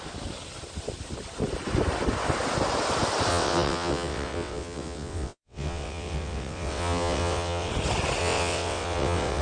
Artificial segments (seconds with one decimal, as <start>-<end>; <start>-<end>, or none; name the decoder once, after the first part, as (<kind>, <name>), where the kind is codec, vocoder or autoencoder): 3.3-7.7 (vocoder, WaveNeXt); 8.2-9.4